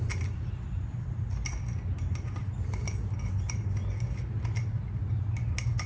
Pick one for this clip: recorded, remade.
recorded